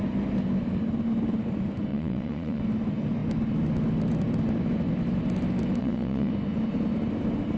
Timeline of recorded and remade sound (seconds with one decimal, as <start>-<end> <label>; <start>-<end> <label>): 0.0-1.9 recorded; 1.9-2.6 remade; 2.6-5.8 recorded; 5.8-6.3 remade; 6.3-7.6 recorded